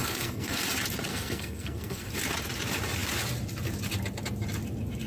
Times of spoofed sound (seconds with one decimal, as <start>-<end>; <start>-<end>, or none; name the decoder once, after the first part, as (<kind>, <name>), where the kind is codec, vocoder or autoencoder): 0.0-0.6 (codec, SNAC); 1.1-2.1